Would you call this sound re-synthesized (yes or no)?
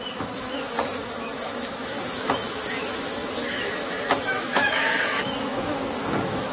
yes